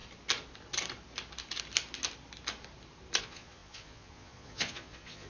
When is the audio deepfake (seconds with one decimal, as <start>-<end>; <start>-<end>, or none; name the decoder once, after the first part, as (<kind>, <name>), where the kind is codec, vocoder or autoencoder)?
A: 3.2-5.3 (vocoder, Vocos)